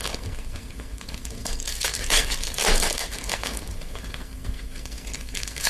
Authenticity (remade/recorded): remade